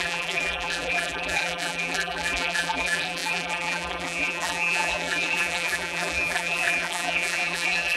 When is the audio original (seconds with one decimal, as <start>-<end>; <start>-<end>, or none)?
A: none